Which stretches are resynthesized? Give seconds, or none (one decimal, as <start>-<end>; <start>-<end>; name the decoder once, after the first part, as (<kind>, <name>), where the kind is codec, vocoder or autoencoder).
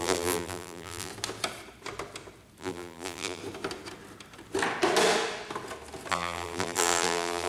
0.0-1.1 (vocoder, BigVGAN v2); 2.6-3.4; 6.1-7.5